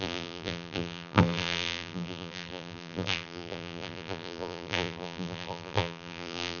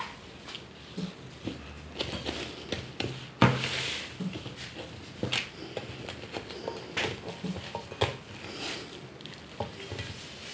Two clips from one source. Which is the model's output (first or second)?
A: first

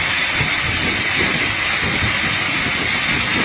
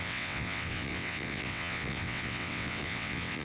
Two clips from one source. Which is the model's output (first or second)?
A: second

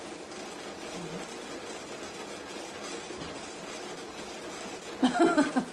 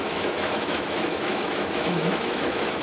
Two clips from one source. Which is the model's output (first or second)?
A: second